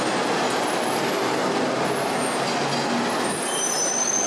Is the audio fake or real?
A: real